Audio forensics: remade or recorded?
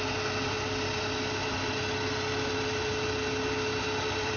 recorded